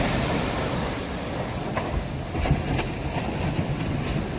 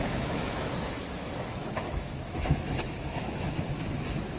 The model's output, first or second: second